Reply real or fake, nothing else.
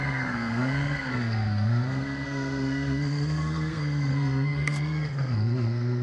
fake